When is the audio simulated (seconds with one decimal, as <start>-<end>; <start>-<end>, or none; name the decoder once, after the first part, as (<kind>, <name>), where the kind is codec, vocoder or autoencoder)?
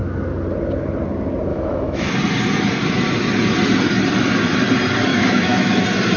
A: 1.5-2.1 (autoencoder, DAC-VAE); 5.1-5.8